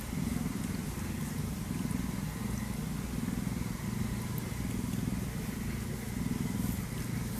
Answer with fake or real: real